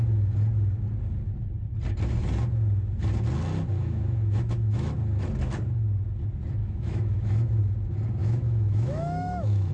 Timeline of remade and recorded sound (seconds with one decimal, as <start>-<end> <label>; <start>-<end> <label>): 0.0-3.8 recorded; 3.8-4.9 remade; 4.9-6.6 recorded; 6.6-7.6 remade; 7.6-8.2 recorded; 8.2-9.7 remade